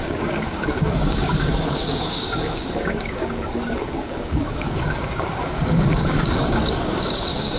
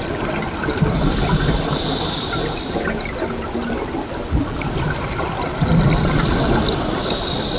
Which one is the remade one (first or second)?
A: first